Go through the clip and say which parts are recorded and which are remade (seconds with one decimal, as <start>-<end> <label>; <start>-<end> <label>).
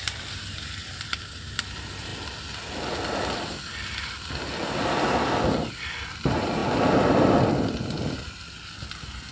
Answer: 0.0-2.1 remade; 2.1-5.7 recorded; 5.7-6.6 remade; 6.6-7.8 recorded; 7.8-9.3 remade